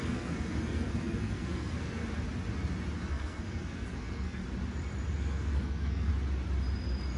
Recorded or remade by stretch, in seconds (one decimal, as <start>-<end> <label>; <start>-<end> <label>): 0.0-2.0 remade; 2.0-3.0 recorded; 3.0-4.4 remade; 4.4-5.2 recorded; 5.2-6.1 remade; 6.1-7.2 recorded